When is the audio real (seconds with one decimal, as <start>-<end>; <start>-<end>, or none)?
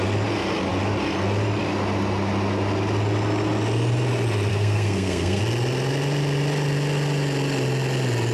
0.0-4.5; 5.4-8.3